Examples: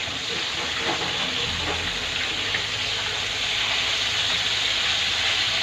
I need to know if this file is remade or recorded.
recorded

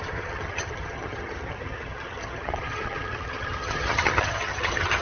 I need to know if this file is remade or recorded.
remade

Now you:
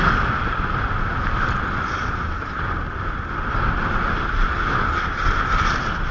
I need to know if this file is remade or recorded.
recorded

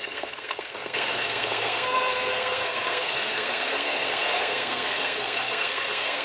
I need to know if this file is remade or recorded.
remade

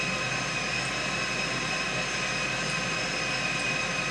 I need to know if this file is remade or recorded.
recorded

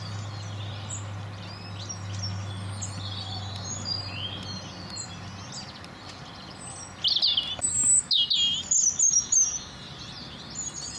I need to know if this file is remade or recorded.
recorded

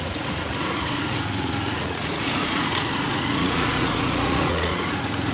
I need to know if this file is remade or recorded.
remade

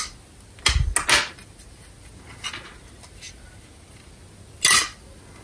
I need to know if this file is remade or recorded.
recorded